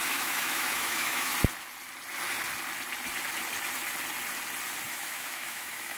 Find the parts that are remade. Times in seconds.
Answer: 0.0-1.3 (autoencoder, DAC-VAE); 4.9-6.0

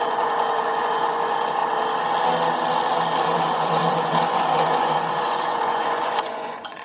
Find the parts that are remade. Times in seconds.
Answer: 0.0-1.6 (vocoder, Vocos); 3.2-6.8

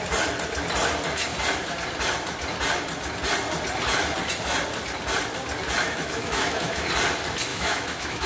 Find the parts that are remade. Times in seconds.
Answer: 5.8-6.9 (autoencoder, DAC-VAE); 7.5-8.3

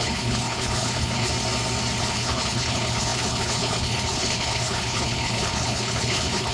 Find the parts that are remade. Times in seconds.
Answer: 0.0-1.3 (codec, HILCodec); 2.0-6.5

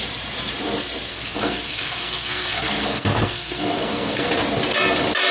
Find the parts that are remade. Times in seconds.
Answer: 1.1-4.3 (codec, SNAC)

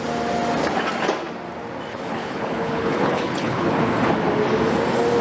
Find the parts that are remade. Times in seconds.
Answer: 1.9-3.8 (codec, HILCodec)